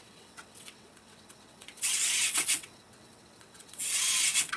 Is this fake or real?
fake